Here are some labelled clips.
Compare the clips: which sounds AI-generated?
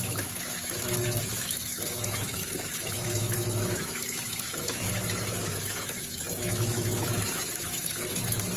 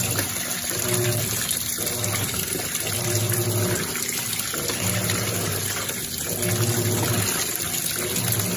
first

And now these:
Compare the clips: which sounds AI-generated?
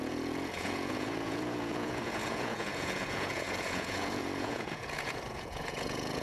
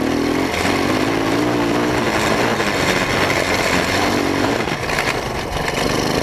first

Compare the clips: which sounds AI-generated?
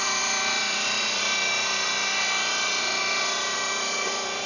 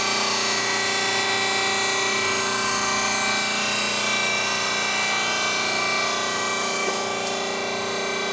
first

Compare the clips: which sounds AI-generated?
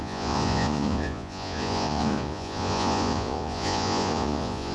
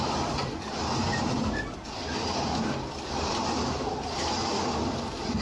first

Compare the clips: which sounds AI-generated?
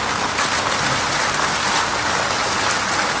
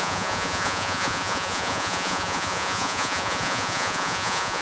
second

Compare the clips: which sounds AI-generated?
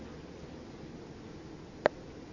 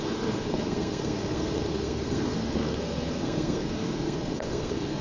second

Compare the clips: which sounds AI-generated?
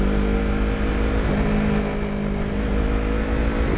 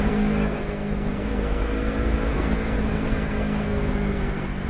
second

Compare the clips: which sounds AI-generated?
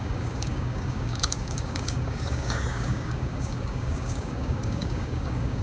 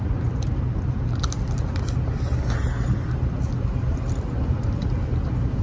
first